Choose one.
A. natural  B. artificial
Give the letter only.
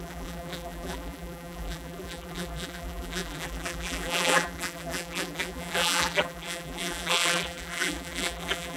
B